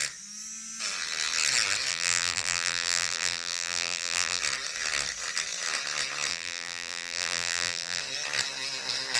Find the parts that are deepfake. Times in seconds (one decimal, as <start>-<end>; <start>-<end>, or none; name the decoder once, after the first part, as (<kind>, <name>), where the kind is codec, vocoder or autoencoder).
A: 1.9-4.4 (vocoder, BigVGAN v2); 6.3-8.0

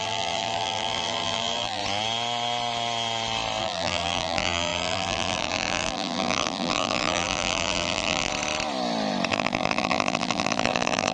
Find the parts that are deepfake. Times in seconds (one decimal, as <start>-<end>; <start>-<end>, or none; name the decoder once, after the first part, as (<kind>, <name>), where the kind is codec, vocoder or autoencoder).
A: 0.0-1.8 (vocoder, BigVGAN v2); 3.6-8.3; 9.3-11.1

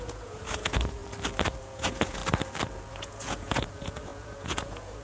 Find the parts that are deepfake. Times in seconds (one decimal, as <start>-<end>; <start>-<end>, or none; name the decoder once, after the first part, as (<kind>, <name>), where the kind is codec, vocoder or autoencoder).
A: 0.0-1.0 (vocoder, Vocos); 1.6-2.2; 2.9-5.0

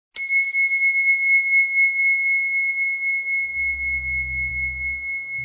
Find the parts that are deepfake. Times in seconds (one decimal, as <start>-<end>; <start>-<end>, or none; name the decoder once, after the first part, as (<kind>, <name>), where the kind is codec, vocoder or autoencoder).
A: none

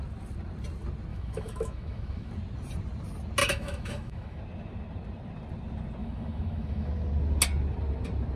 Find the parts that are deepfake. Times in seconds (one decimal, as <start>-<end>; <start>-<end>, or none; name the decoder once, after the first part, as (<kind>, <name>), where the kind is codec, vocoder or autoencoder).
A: 1.1-2.3 (autoencoder, DAC-VAE); 3.4-4.4; 6.0-6.9

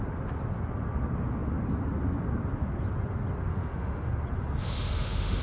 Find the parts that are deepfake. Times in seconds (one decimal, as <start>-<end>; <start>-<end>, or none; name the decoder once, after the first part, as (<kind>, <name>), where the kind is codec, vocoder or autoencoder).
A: 3.5-4.1 (autoencoder, DAC-VAE); 4.6-5.4